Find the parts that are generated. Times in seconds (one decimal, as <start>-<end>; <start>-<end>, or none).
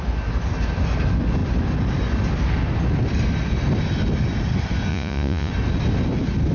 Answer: 4.9-5.5